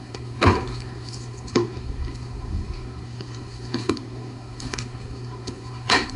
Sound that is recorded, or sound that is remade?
remade